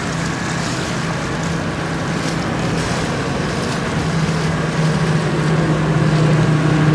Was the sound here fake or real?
real